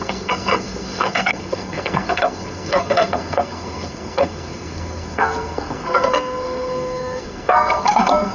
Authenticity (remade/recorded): remade